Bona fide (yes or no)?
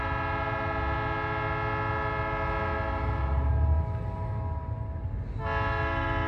yes